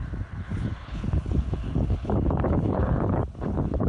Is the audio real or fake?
fake